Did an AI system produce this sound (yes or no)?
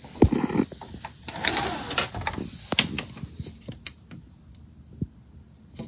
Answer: no